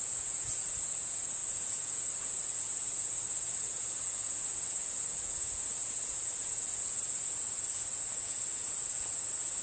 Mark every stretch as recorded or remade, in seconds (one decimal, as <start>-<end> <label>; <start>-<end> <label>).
0.0-9.6 remade